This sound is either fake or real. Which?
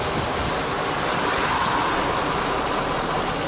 real